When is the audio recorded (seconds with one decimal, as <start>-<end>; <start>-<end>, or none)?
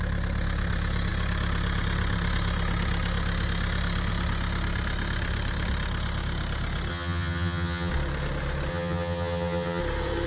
0.0-6.9; 7.9-8.7; 9.8-10.3